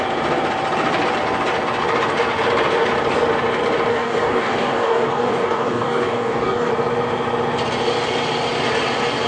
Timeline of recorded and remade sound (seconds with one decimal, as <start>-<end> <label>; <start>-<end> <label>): 0.0-3.9 recorded; 3.9-6.7 remade; 6.7-9.3 recorded